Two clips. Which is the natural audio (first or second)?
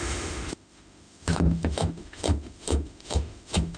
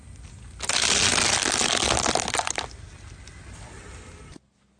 second